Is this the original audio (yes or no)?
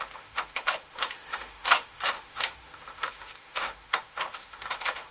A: no